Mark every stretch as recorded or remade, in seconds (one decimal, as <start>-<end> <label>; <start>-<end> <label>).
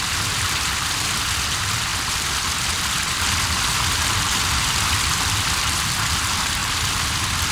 0.0-7.5 recorded